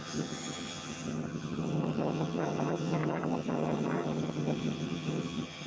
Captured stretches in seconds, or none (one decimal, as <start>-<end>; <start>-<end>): none